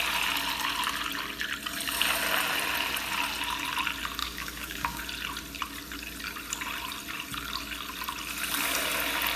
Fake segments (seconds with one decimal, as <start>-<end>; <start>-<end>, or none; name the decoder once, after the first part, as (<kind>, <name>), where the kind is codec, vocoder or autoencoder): 4.2-5.0 (codec, DAC)